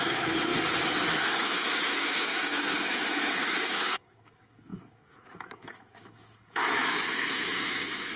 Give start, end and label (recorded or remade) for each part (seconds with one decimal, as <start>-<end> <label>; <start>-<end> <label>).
0.0-0.5 remade; 0.5-1.4 recorded; 1.4-8.2 remade